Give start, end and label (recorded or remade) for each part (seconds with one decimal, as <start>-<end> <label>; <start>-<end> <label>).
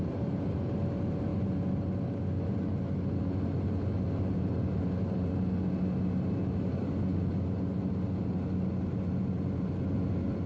0.0-10.5 recorded